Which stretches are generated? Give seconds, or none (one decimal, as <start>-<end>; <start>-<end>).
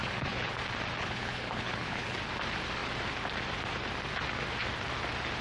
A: 0.0-0.5; 1.0-2.2